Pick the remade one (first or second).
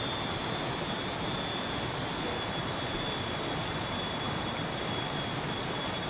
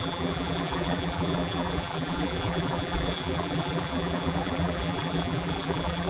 second